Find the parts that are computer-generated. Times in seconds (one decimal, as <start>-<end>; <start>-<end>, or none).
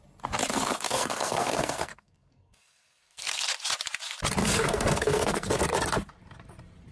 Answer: 0.5-3.5; 4.4-5.6